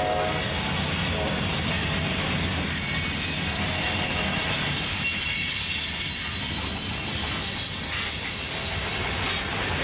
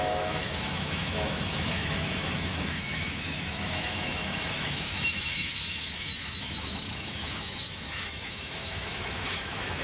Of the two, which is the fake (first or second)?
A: second